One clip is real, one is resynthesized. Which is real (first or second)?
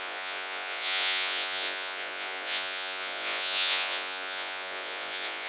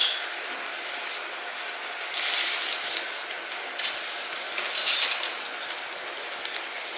second